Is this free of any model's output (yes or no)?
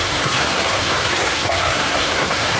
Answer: no